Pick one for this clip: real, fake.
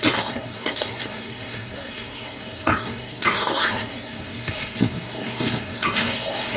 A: fake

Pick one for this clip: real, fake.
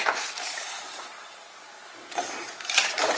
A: fake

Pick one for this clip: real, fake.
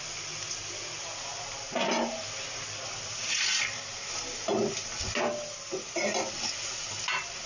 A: real